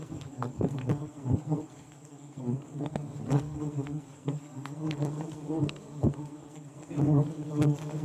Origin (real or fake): fake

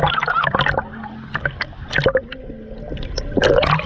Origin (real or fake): real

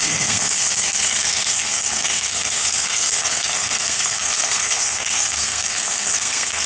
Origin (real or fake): fake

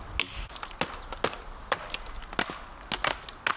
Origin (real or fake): real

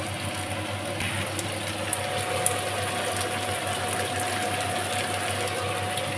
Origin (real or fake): real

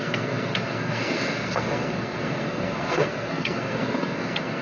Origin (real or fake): fake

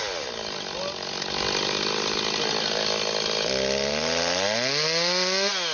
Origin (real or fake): real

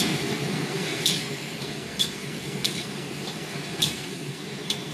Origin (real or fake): fake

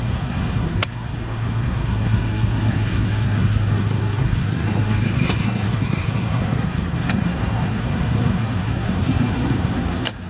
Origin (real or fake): fake